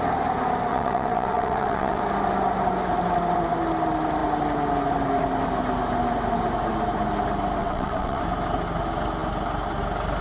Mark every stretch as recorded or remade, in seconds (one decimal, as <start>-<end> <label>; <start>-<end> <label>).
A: 0.0-0.7 recorded; 0.7-2.0 remade; 2.0-7.6 recorded; 7.6-8.2 remade; 8.2-10.2 recorded